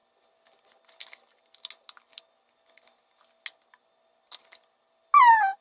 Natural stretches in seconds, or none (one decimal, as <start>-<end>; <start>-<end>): 0.0-5.6

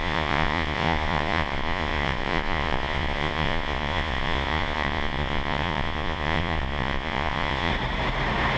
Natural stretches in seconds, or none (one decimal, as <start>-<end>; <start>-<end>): 7.7-8.6

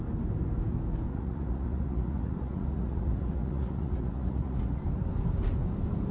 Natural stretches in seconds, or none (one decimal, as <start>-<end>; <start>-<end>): 0.0-1.1; 4.8-6.1

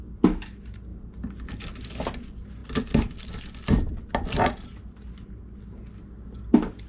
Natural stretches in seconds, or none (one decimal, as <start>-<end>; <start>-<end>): 0.0-6.9